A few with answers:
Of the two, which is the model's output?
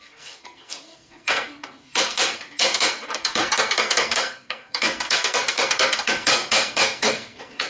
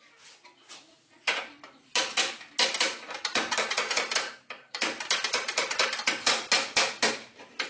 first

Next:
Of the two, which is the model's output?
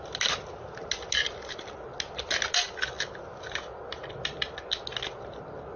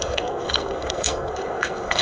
second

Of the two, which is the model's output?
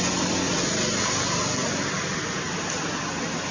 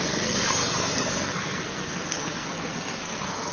second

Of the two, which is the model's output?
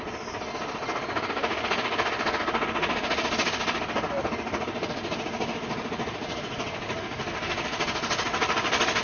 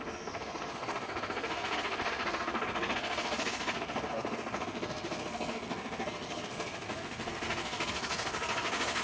second